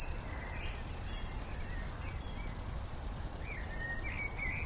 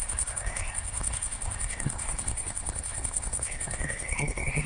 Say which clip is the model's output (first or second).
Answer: second